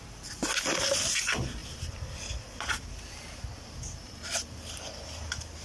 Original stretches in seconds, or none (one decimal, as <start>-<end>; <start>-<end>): 0.0-5.6

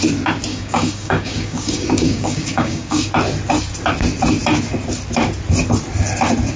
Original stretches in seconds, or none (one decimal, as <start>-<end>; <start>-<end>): 0.0-0.5; 3.1-6.6

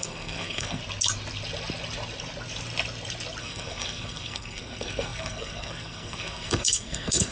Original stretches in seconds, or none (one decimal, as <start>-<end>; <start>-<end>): 0.8-3.4

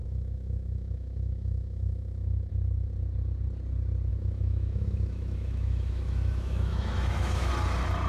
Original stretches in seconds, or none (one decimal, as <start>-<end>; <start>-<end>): 2.5-4.1; 7.5-8.1

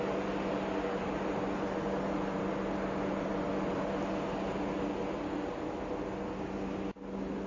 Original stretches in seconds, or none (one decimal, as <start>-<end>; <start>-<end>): 0.0-7.5

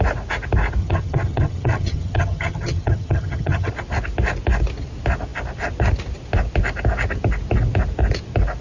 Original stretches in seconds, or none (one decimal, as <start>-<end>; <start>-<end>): 0.0-0.8; 3.7-8.6